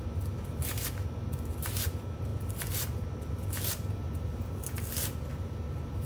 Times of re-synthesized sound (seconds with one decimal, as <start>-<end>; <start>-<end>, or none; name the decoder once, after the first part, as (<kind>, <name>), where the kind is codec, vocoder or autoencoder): none